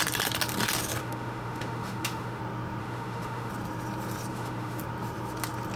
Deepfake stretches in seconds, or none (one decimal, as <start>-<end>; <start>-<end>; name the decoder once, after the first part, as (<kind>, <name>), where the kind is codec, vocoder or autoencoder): 1.0-2.4 (autoencoder, DAC-VAE); 2.8-3.5; 4.3-4.8